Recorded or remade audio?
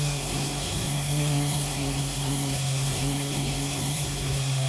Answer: remade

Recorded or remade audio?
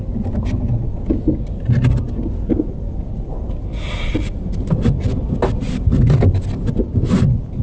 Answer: recorded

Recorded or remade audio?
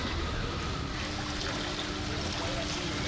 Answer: recorded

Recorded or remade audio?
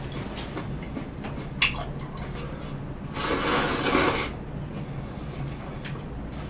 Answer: recorded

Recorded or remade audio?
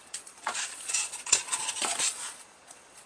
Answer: remade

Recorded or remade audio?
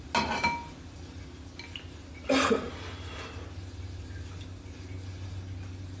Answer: recorded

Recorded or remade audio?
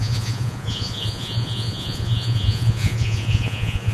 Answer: remade